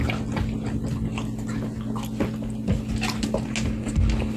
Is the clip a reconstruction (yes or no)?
no